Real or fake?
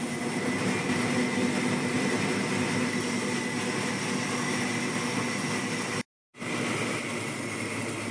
real